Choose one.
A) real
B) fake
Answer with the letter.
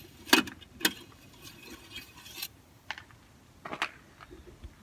A